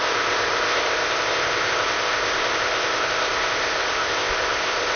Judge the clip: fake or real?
fake